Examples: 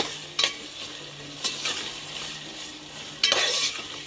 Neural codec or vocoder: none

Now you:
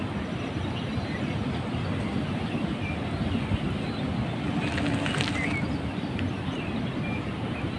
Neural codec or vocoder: none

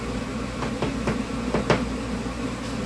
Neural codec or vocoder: none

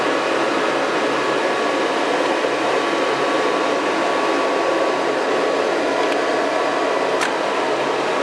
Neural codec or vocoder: none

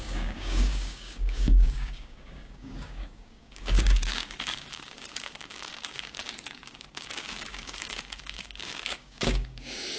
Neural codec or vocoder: codec, DAC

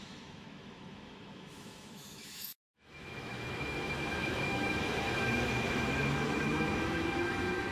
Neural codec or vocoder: autoencoder, DAC-VAE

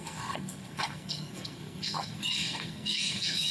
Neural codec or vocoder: codec, SNAC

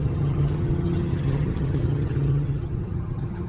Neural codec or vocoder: vocoder, HiFi-GAN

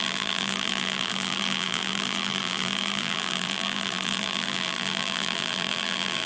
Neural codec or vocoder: vocoder, BigVGAN v2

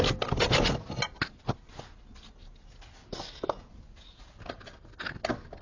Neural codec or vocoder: none